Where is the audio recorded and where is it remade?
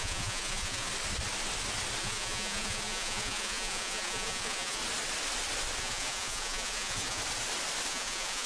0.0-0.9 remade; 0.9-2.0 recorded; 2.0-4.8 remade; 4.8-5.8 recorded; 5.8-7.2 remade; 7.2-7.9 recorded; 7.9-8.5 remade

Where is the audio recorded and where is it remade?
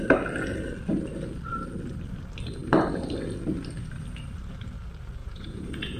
0.0-5.2 recorded; 5.2-6.0 remade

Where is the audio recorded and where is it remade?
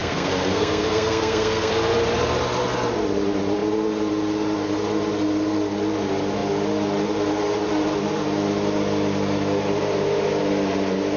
0.0-1.7 remade; 1.7-11.2 recorded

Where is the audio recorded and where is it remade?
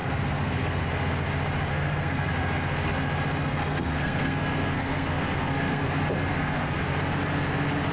0.0-0.8 remade; 0.8-1.7 recorded; 1.7-2.3 remade; 2.3-3.5 recorded; 3.5-5.8 remade; 5.8-6.3 recorded; 6.3-7.0 remade; 7.0-7.9 recorded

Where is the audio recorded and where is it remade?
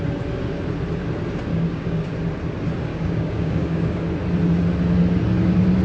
0.0-1.5 recorded; 1.5-2.1 remade; 2.1-2.9 recorded; 2.9-4.0 remade; 4.0-5.8 recorded